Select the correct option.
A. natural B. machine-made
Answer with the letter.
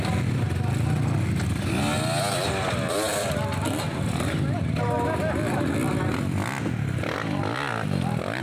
A